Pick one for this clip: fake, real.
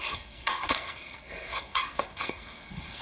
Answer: fake